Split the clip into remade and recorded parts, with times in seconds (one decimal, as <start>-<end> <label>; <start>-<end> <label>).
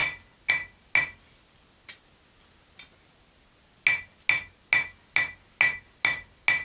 0.0-6.6 recorded